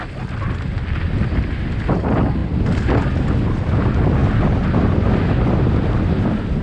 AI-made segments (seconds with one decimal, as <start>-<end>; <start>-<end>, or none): none